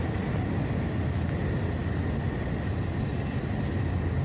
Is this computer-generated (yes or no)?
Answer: no